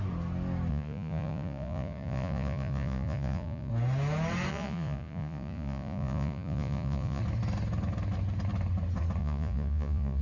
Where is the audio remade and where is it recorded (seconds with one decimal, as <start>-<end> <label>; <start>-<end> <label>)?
0.0-0.7 recorded; 0.7-3.7 remade; 3.7-4.5 recorded; 4.5-7.2 remade; 7.2-9.2 recorded; 9.2-10.2 remade